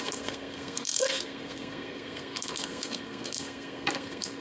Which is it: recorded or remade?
remade